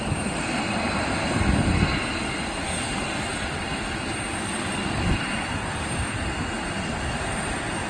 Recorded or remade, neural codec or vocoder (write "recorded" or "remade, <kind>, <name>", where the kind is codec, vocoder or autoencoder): recorded